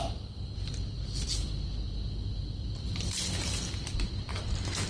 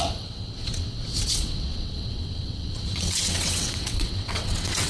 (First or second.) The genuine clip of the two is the first